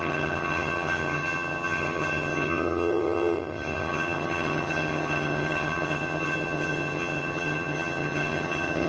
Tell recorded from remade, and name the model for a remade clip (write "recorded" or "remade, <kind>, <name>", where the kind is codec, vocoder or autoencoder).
remade, vocoder, HiFi-GAN